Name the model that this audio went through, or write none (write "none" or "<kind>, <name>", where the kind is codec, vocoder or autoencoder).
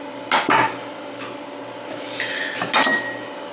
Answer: none